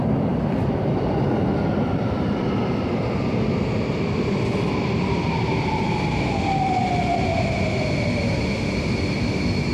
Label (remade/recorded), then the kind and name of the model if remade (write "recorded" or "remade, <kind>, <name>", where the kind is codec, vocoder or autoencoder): recorded